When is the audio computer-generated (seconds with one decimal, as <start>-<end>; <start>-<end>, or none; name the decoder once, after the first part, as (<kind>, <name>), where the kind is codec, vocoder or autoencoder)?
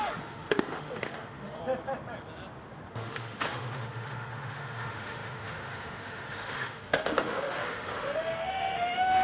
0.0-1.6 (autoencoder, DAC-VAE); 2.9-9.2